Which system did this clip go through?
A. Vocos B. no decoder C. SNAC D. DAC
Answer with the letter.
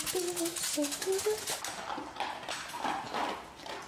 B